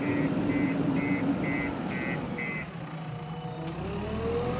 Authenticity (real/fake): real